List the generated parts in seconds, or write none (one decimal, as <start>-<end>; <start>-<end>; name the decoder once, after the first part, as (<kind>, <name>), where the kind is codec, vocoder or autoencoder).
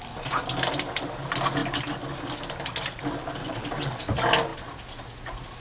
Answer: 3.4-4.1 (vocoder, WaveNeXt)